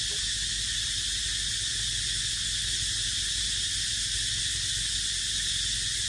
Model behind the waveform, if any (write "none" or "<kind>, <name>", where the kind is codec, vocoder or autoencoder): none